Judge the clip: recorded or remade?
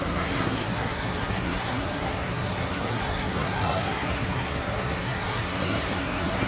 remade